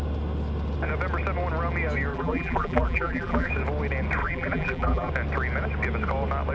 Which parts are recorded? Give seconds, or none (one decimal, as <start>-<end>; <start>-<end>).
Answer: 0.0-2.1; 3.5-4.2; 5.1-6.5